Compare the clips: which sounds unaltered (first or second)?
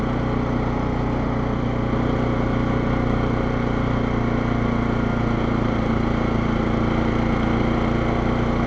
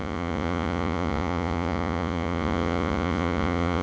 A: first